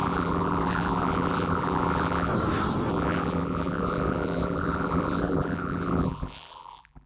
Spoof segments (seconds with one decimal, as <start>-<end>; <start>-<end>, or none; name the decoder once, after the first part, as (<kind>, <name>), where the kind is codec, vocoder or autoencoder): 0.0-2.3 (vocoder, BigVGAN v2); 2.9-7.1